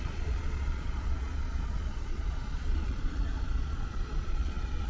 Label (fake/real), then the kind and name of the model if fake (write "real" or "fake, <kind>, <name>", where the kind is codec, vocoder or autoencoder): fake, vocoder, Vocos